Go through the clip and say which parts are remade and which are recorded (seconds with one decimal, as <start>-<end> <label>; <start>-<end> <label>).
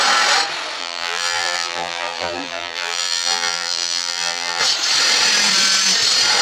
0.0-0.8 recorded; 0.8-4.6 remade; 4.6-6.4 recorded